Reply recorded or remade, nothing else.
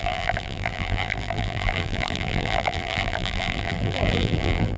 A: remade